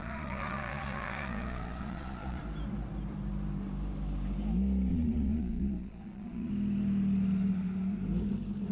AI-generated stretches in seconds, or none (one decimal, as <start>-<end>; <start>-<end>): 0.0-2.4; 4.9-6.5

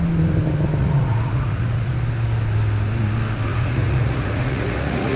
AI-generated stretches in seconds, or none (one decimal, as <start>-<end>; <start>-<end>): 0.8-1.9; 3.5-5.2

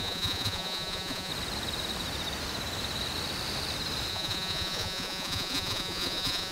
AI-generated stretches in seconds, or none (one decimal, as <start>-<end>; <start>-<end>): 0.0-1.3; 4.1-6.5